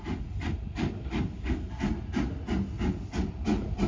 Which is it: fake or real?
real